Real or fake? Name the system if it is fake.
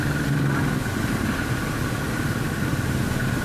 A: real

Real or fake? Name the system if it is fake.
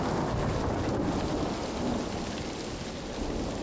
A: real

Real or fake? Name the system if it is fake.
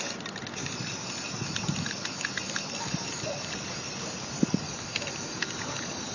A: real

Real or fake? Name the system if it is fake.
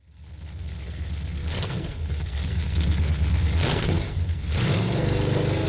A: fake, codec, SNAC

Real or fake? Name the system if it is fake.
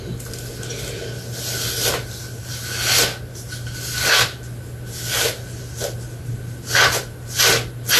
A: real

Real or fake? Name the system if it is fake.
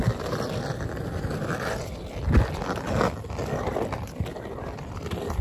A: real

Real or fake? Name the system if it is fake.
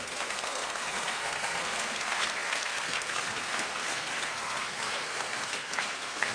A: fake, codec, SNAC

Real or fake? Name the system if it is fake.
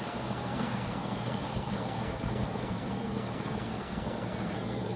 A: fake, codec, SNAC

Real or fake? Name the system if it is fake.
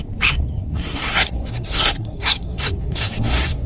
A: fake, codec, SNAC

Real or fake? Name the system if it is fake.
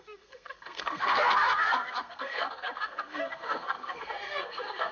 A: fake, codec, SNAC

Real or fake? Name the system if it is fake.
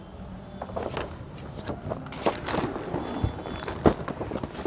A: real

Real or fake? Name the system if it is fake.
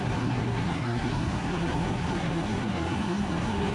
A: fake, codec, SNAC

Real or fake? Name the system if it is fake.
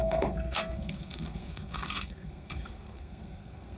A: fake, codec, SNAC